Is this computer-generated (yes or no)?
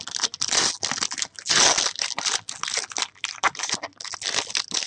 no